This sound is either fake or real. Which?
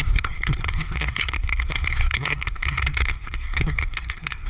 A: fake